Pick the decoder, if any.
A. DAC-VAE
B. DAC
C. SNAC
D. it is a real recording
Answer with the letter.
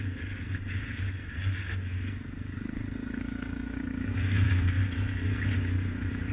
C